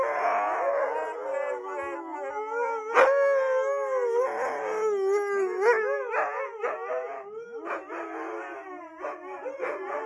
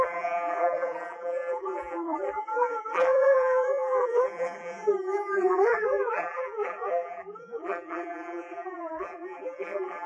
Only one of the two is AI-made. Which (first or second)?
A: second